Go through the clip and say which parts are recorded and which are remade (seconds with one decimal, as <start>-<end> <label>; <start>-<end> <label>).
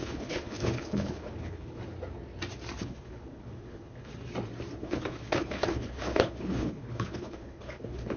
0.0-1.8 remade; 1.8-2.8 recorded; 2.8-4.1 remade; 4.1-4.8 recorded; 4.8-8.2 remade